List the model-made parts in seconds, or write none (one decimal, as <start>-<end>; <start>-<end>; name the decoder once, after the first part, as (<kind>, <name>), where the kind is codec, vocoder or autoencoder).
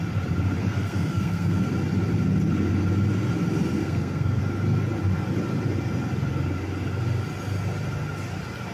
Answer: 0.6-1.7 (codec, SNAC); 3.8-4.4